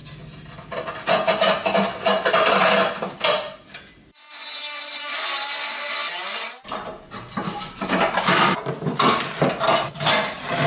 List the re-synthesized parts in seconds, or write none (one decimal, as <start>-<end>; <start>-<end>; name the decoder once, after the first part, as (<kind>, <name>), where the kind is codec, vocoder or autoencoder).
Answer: none